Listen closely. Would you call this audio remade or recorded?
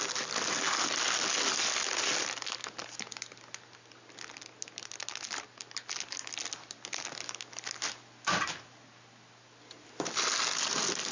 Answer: recorded